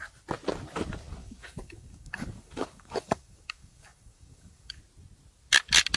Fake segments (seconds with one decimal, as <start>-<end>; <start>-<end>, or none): 1.2-4.8